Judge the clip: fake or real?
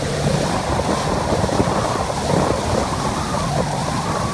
real